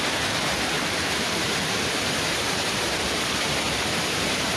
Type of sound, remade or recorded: remade